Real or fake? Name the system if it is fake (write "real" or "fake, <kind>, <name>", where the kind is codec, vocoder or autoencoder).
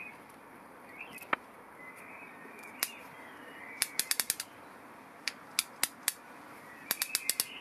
real